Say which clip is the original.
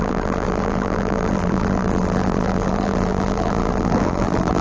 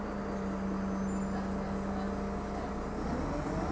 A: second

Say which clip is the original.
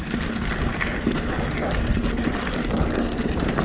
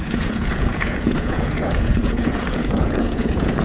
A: first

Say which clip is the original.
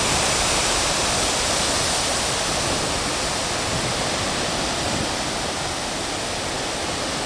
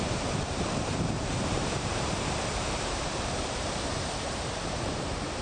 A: first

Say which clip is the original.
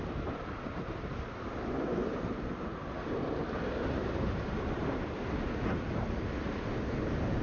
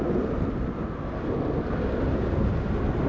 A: second